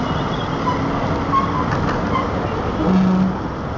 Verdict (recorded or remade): recorded